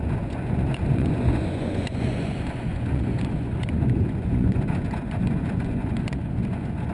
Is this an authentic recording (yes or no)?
no